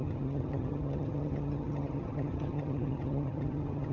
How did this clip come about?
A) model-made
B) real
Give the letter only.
A